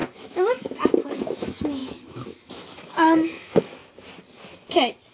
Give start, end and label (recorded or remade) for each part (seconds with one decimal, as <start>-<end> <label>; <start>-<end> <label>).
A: 0.0-3.8 remade; 3.8-5.1 recorded